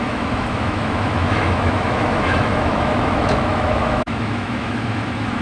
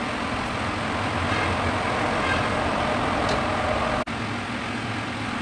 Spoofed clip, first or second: first